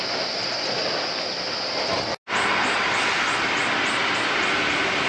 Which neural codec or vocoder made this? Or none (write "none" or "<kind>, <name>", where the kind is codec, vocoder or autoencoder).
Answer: none